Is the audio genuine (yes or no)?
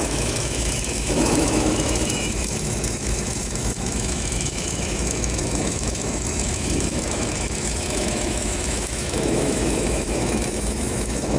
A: no